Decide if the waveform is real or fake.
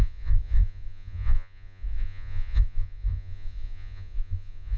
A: fake